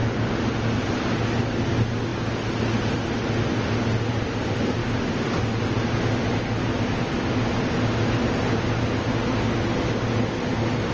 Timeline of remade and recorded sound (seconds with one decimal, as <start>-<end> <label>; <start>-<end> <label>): 0.0-10.9 recorded